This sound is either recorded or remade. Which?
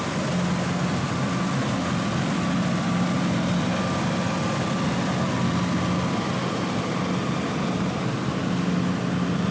recorded